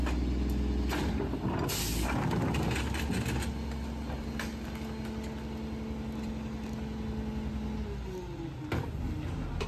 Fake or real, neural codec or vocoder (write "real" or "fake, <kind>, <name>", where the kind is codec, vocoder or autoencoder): real